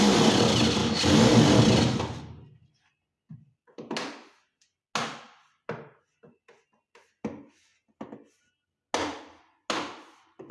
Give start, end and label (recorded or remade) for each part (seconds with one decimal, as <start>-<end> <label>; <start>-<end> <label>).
0.0-10.5 recorded